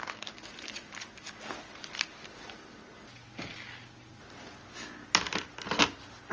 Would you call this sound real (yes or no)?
yes